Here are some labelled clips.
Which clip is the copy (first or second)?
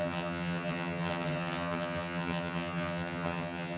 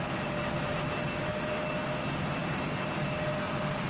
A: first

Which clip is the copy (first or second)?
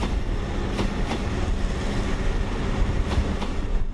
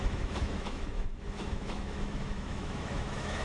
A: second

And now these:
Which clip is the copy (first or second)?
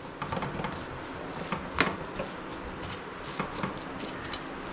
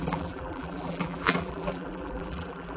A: second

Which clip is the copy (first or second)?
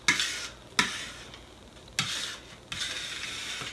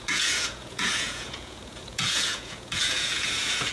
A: second